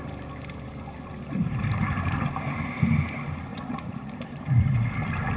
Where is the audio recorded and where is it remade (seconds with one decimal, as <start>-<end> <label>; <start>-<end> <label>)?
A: 0.0-3.5 recorded; 3.5-4.1 remade; 4.1-5.4 recorded